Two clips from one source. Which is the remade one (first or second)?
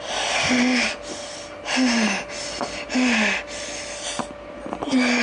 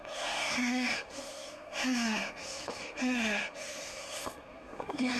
second